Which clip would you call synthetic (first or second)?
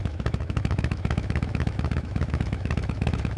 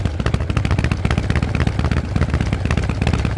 first